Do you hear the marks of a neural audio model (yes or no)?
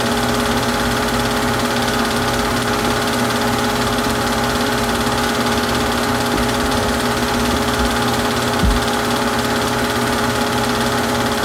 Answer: no